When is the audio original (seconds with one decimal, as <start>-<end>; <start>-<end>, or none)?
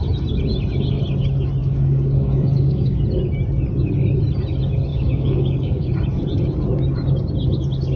0.0-1.6; 3.0-4.9; 5.9-8.0